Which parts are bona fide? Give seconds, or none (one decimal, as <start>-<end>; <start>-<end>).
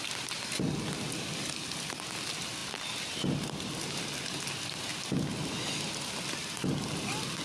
0.0-7.4